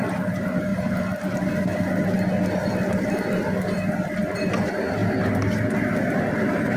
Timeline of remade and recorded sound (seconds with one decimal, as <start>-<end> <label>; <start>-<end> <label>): 0.0-6.8 recorded